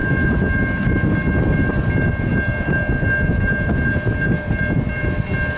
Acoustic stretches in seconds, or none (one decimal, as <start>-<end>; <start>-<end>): 0.0-5.6